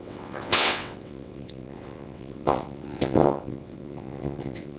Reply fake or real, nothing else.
fake